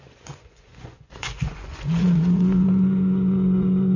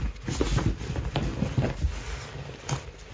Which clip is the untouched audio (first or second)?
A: second